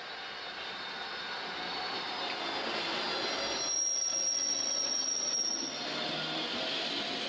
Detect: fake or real real